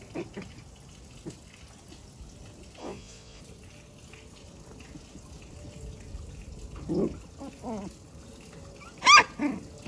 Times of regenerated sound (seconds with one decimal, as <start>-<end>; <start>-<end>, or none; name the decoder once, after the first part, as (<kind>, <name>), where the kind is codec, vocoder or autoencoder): 2.8-3.4 (vocoder, Vocos)